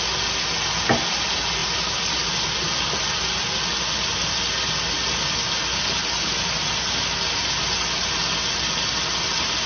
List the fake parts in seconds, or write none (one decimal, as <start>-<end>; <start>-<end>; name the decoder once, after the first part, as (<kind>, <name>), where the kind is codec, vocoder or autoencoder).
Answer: none